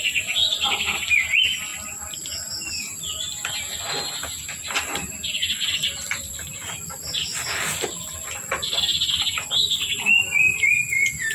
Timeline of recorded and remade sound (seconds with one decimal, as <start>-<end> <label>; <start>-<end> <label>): 0.0-4.6 recorded; 4.6-9.1 remade; 9.1-11.3 recorded